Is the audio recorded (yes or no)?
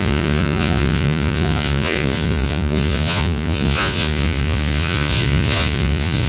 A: no